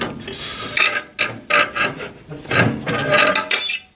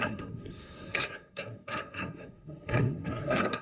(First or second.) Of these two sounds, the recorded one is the first